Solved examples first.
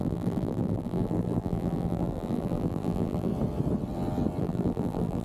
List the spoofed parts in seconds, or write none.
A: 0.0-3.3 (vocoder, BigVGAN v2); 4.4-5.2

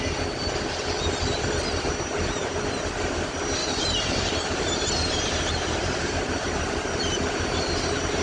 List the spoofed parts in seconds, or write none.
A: 1.3-1.8 (vocoder, BigVGAN v2); 3.6-6.9